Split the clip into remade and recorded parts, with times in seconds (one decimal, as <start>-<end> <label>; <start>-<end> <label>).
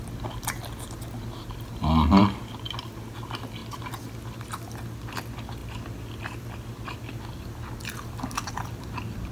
0.0-9.3 recorded